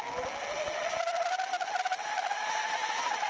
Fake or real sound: real